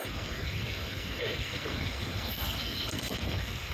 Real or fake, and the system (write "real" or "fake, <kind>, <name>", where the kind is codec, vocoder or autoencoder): fake, codec, SNAC